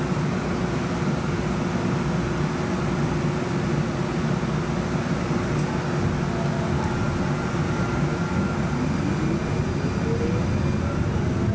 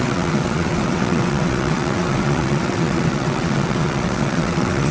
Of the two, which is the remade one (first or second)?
second